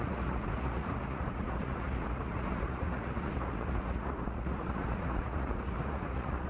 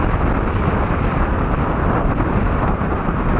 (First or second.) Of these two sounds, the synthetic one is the first